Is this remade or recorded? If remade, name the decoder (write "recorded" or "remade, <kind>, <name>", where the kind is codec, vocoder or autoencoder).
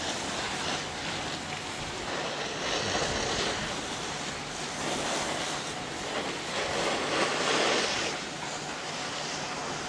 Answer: recorded